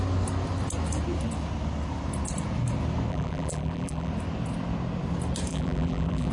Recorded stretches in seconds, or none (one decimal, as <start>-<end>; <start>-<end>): 0.0-3.1; 4.1-5.5